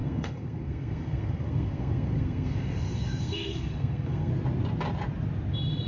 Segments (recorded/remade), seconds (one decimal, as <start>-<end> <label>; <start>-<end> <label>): 0.0-4.3 remade; 4.3-5.9 recorded